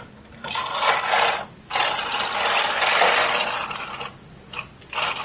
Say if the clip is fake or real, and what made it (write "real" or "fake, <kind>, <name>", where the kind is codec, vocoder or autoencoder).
real